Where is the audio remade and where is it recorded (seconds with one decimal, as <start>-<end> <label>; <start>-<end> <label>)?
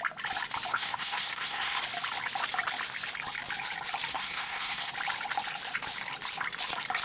0.0-0.7 recorded; 0.7-1.8 remade; 1.8-4.1 recorded; 4.1-4.9 remade; 4.9-7.0 recorded